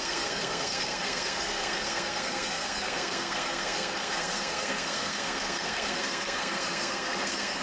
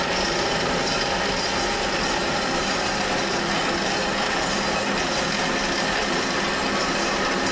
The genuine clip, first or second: second